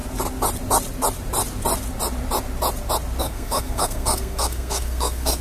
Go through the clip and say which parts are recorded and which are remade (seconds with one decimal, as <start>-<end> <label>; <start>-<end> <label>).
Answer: 0.0-3.2 recorded; 3.2-5.4 remade